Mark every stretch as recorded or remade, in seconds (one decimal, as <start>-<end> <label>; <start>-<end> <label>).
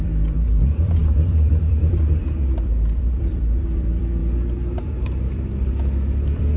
0.0-4.2 remade; 4.2-4.8 recorded; 4.8-6.6 remade